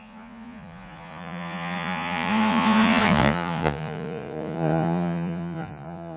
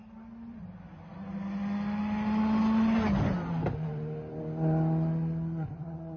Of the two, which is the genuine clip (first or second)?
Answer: second